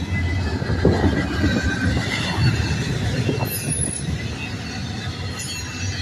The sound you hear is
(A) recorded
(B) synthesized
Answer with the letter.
A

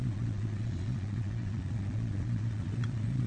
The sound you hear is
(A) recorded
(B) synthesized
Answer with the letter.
B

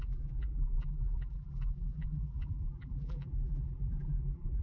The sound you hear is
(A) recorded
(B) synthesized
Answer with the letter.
B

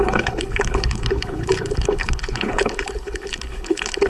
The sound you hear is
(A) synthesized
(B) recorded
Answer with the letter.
A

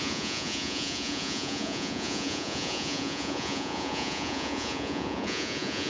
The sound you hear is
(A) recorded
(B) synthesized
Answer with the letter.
B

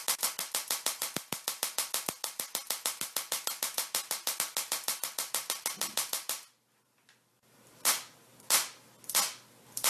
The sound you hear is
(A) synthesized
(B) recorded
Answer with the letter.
B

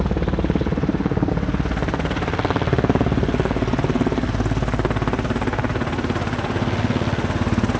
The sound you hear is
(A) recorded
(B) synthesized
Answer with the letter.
A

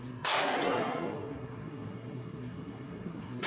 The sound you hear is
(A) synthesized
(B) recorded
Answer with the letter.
A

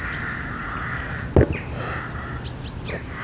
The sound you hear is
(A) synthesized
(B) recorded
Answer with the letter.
B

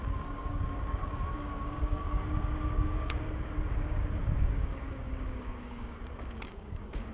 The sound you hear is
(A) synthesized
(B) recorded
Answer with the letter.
A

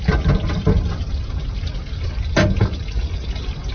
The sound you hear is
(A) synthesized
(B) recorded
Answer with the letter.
B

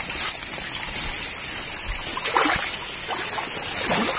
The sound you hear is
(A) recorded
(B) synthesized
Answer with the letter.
A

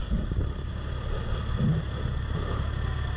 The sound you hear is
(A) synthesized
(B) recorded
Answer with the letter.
B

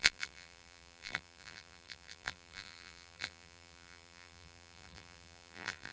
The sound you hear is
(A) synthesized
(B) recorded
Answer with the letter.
A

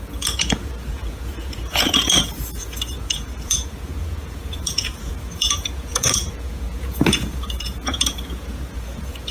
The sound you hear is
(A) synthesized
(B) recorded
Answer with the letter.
A